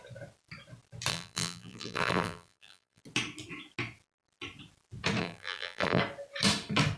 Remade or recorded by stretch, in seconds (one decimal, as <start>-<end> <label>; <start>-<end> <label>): 0.0-1.1 recorded; 1.1-3.0 remade; 3.0-5.2 recorded; 5.2-6.0 remade; 6.0-7.0 recorded